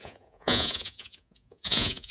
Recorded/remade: remade